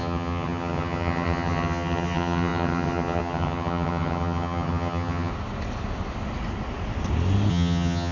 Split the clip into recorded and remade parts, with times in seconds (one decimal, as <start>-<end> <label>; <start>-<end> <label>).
0.0-5.3 remade; 5.3-7.5 recorded; 7.5-8.1 remade